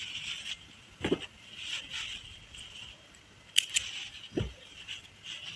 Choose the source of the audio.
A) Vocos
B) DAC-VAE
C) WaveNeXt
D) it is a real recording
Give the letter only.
D